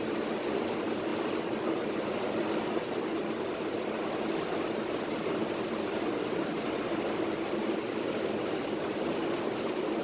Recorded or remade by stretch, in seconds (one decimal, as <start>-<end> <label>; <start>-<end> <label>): 0.0-10.0 recorded